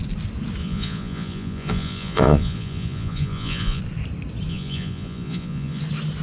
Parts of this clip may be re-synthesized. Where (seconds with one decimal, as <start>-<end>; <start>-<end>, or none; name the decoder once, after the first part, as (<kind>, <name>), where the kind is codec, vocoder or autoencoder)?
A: 0.6-3.8 (vocoder, Vocos); 4.5-5.8

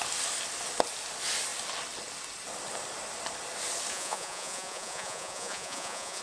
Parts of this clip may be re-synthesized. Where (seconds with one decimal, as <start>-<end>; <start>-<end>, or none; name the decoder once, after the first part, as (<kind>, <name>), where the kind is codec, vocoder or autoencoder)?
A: 3.9-6.2 (vocoder, Vocos)